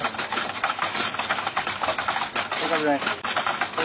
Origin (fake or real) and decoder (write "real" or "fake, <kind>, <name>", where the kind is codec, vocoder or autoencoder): real